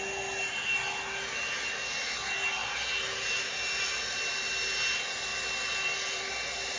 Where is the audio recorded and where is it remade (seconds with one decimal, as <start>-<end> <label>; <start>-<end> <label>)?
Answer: 0.0-5.3 recorded; 5.3-6.8 remade